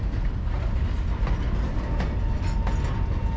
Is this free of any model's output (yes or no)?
yes